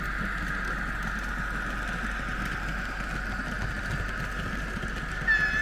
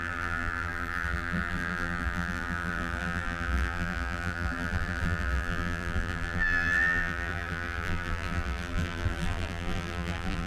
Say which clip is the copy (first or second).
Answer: second